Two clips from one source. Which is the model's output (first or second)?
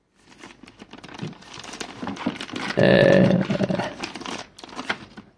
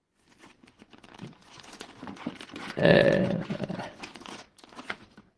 second